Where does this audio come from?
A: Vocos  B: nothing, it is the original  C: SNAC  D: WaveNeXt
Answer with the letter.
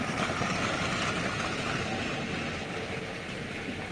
B